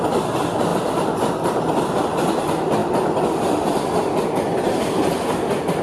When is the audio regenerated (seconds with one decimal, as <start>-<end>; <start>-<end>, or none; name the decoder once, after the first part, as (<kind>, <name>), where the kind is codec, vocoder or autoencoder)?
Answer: none